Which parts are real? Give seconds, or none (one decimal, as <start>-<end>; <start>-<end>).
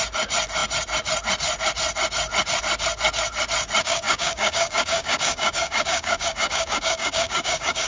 0.0-3.8